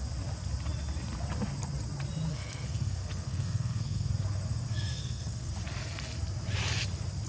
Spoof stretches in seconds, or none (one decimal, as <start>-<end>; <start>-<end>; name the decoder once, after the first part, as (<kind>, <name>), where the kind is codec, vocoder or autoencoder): 2.3-4.1 (codec, SNAC); 4.7-5.5